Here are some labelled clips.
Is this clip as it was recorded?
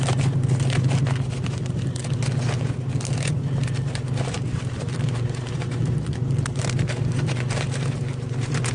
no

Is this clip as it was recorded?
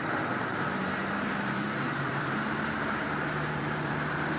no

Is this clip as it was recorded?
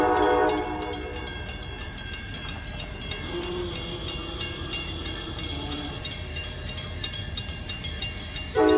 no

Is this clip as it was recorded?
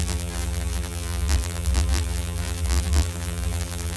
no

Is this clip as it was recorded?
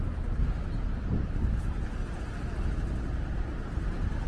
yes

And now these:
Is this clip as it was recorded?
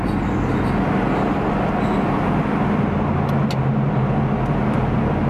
yes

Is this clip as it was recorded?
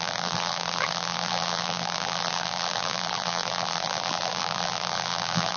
no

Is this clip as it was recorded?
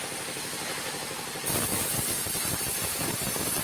yes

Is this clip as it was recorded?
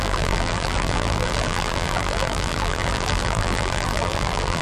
no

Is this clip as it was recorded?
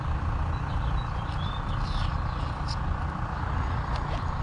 yes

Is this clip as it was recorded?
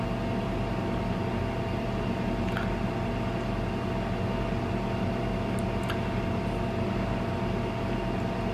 yes